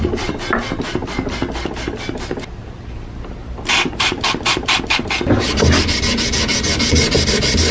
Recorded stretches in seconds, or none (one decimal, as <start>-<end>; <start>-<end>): 0.0-7.7

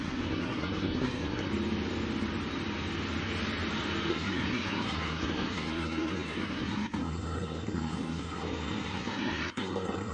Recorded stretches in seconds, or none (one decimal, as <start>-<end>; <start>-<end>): 1.5-4.1

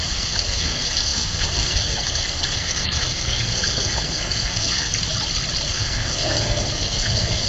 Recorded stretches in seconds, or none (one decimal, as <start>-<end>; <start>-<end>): 4.9-5.7

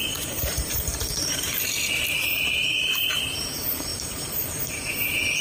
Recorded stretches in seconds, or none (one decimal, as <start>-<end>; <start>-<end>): 1.5-2.4

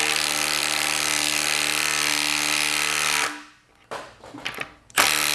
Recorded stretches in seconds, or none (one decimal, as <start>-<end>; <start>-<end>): 0.0-5.3

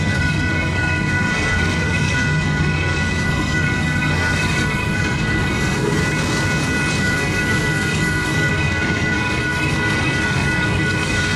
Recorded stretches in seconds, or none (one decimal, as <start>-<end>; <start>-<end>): 6.0-7.0